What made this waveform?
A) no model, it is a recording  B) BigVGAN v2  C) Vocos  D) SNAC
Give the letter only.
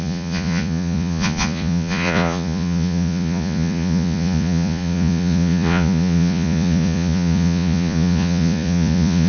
C